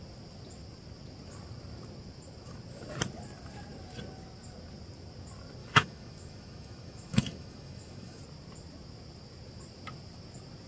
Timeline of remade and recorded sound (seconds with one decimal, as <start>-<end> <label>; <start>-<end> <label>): 0.0-5.6 recorded; 5.6-8.2 remade; 8.2-10.7 recorded